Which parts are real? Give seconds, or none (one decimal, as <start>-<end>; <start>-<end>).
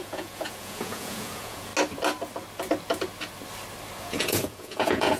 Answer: 1.7-4.0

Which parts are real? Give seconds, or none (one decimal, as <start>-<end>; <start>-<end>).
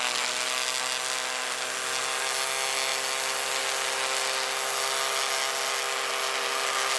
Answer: 0.0-7.0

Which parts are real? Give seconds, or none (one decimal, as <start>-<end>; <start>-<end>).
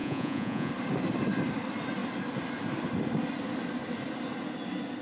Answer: 0.7-5.0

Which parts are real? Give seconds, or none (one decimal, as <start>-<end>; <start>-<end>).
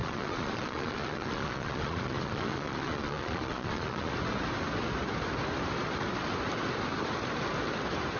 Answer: 4.1-8.2